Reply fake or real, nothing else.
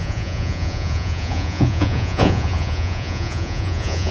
fake